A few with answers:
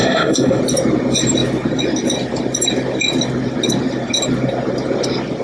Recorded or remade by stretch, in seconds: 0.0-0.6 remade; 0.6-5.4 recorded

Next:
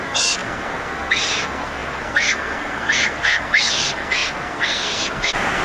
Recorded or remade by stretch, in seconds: 0.0-5.6 remade

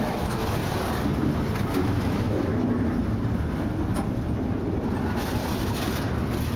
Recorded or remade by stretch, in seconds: 0.0-0.6 remade; 0.6-1.6 recorded; 1.6-2.5 remade; 2.5-6.6 recorded

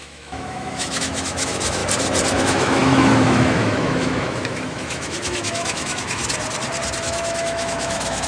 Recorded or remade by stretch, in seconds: 0.0-1.8 remade; 1.8-2.4 recorded; 2.4-6.2 remade; 6.2-7.0 recorded; 7.0-8.3 remade

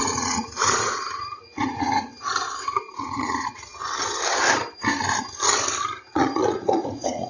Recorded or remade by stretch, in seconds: 0.0-2.1 remade; 2.1-2.9 recorded; 2.9-3.7 remade; 3.7-6.1 recorded; 6.1-7.3 remade

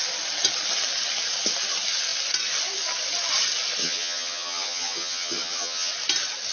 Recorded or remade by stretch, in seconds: 0.0-3.8 recorded; 3.8-5.9 remade; 5.9-6.5 recorded